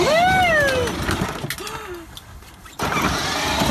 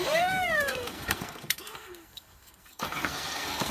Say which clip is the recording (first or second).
first